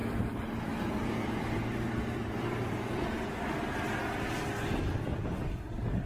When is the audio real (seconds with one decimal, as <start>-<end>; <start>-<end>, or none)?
3.2-6.1